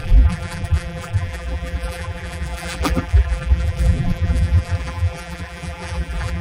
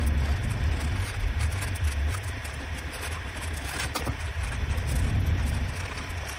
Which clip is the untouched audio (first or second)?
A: second